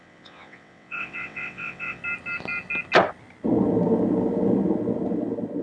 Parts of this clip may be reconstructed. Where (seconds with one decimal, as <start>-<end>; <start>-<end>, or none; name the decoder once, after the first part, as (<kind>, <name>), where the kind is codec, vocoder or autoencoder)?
0.0-2.0 (vocoder, WaveNeXt)